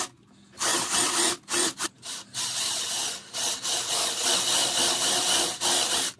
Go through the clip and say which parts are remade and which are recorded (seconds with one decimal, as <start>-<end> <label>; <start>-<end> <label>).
0.0-0.7 recorded; 0.7-2.9 remade; 2.9-4.6 recorded; 4.6-6.2 remade